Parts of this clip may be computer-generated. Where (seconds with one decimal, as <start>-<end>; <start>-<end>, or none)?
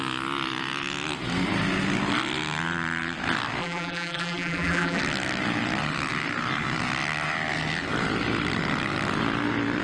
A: 3.6-5.0